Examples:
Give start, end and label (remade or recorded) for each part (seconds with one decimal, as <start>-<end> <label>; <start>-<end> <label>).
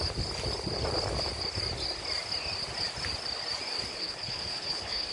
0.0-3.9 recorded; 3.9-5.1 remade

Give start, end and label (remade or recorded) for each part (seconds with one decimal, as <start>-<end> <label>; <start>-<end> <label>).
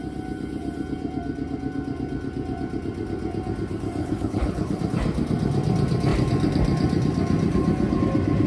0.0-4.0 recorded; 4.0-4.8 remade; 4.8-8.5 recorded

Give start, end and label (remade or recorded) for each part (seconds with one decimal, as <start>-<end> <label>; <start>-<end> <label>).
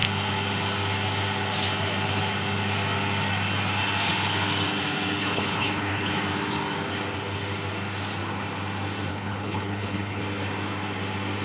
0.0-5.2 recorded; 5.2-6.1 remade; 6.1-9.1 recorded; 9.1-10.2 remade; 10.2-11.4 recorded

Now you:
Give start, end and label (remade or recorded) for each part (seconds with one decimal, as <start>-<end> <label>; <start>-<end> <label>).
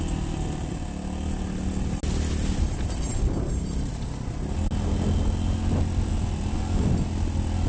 0.0-7.7 recorded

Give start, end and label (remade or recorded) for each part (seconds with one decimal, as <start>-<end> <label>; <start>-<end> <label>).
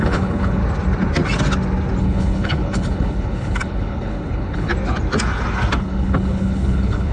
0.0-0.6 remade; 0.6-2.0 recorded; 2.0-4.7 remade; 4.7-5.8 recorded; 5.8-7.1 remade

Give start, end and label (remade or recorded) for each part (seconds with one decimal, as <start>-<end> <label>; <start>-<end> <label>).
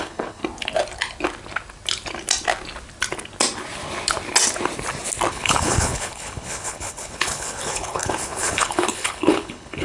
0.0-0.4 remade; 0.4-5.3 recorded; 5.3-9.8 remade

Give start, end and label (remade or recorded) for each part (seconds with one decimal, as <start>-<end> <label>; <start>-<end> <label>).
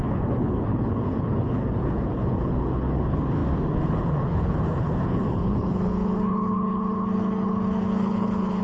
0.0-8.6 remade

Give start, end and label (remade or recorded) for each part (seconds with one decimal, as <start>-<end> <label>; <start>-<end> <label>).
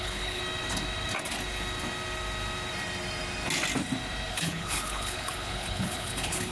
0.0-0.4 remade; 0.4-4.3 recorded; 4.3-6.5 remade